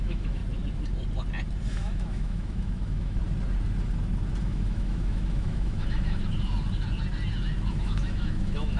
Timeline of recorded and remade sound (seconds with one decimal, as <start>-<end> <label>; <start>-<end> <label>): 0.0-0.4 remade; 0.4-1.7 recorded; 1.7-3.2 remade; 3.2-4.4 recorded; 4.4-6.2 remade; 6.2-7.7 recorded; 7.7-8.8 remade